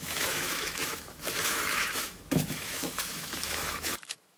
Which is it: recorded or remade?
remade